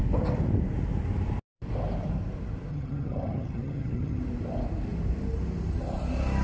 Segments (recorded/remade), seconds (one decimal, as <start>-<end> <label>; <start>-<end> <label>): 0.0-2.7 recorded; 2.7-4.2 remade; 4.2-6.4 recorded